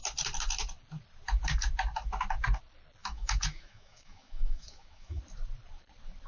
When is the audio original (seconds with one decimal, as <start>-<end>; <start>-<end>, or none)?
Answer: 0.0-3.0; 5.2-6.3